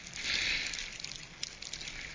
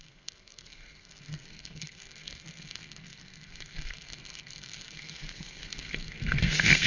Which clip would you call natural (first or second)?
first